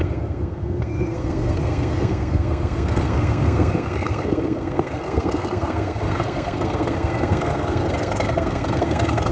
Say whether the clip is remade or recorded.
remade